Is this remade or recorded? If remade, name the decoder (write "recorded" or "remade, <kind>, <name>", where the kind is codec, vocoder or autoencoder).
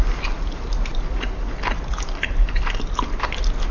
recorded